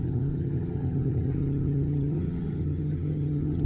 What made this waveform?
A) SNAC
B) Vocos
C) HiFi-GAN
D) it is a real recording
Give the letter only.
C